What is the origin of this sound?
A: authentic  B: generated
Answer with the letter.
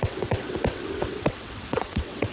B